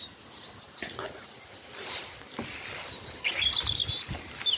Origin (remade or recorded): recorded